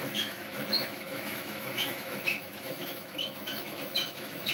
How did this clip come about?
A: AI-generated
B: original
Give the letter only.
A